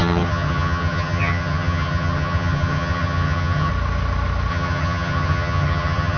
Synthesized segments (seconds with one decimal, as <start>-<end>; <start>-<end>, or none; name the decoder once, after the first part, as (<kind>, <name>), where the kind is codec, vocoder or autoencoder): 0.0-3.7 (vocoder, HiFi-GAN); 4.5-6.2